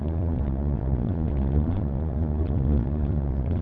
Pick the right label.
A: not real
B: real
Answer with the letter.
A